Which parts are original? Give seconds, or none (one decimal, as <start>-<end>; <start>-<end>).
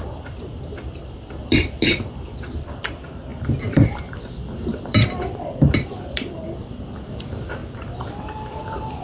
none